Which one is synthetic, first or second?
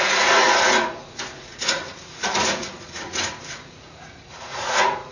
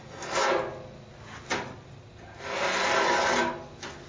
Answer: first